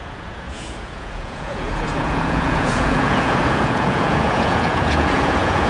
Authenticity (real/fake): fake